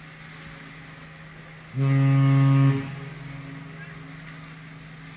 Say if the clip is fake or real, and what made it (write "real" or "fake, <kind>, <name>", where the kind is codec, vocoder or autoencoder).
real